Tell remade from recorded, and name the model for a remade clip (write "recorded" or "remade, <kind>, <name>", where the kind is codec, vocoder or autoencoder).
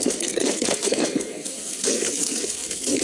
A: remade, codec, SNAC